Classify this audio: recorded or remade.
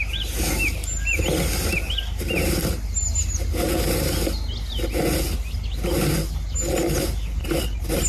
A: recorded